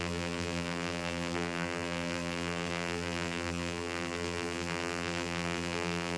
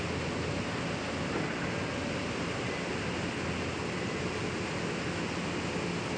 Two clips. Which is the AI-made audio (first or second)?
first